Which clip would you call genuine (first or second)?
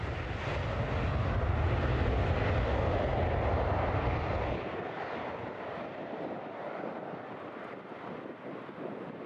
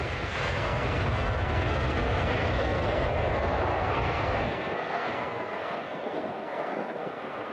first